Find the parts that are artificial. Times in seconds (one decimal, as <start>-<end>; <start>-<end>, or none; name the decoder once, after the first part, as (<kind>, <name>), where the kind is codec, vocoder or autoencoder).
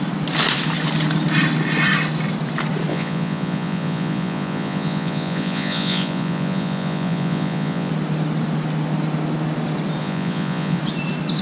2.9-7.9 (vocoder, Vocos); 10.0-10.8